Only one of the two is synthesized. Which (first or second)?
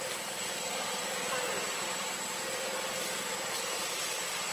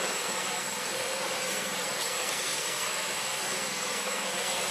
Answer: second